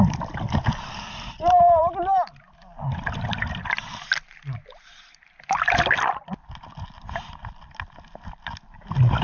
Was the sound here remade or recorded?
recorded